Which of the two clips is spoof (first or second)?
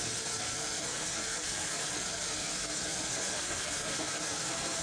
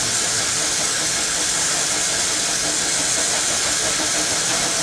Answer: first